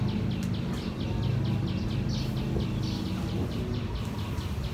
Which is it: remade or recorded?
recorded